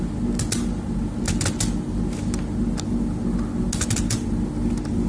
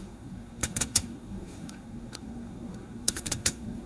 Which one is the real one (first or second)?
first